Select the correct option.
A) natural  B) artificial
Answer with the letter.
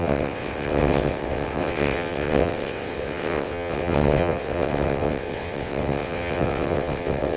B